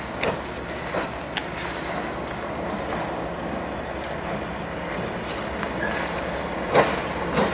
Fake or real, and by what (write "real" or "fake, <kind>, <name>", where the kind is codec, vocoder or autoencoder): real